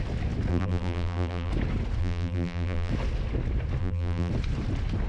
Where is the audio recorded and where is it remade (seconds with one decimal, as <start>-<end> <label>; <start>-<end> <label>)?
0.0-0.5 recorded; 0.5-1.5 remade; 1.5-2.0 recorded; 2.0-2.9 remade; 2.9-3.8 recorded; 3.8-4.3 remade; 4.3-5.1 recorded